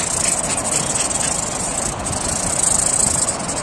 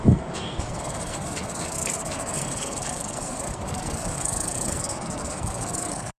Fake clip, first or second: second